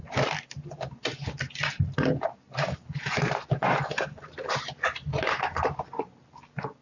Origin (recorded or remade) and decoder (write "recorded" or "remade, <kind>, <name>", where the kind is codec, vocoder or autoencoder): recorded